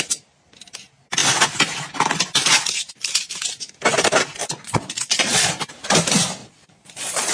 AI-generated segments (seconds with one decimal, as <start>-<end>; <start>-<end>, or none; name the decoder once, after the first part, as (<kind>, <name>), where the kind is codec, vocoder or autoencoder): 4.4-5.5 (vocoder, Vocos); 6.4-7.3

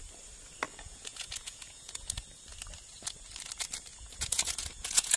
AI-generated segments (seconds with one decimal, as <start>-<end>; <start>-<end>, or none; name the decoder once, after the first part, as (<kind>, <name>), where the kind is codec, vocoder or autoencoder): 0.7-2.0 (vocoder, Vocos); 3.9-5.2

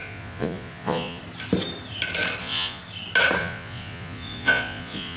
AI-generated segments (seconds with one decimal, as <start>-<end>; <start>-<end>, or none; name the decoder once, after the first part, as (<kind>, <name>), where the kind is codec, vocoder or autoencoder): 0.0-1.2 (vocoder, Vocos); 2.4-2.8; 3.4-5.2

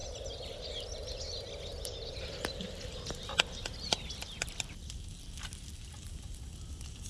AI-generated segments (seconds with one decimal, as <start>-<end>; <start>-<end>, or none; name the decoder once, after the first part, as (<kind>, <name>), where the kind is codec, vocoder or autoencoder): 1.7-5.7 (vocoder, BigVGAN v2)